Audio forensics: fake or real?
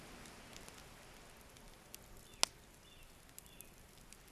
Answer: real